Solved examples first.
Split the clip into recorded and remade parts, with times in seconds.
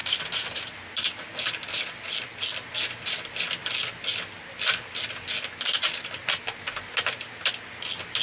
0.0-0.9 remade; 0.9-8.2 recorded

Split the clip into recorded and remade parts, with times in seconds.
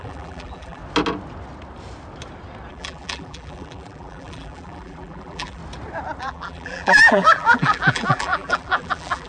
0.0-0.8 remade; 0.8-2.7 recorded; 2.7-5.6 remade; 5.6-6.2 recorded; 6.2-9.3 remade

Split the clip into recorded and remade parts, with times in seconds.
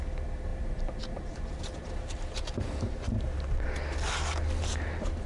0.0-0.5 recorded; 0.5-3.7 remade; 3.7-5.3 recorded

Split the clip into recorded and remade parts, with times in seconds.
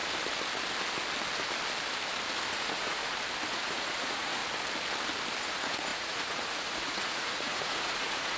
0.0-2.5 recorded; 2.5-3.0 remade; 3.0-3.5 recorded; 3.5-4.4 remade; 4.4-5.5 recorded; 5.5-8.4 remade